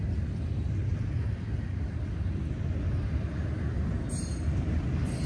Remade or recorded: recorded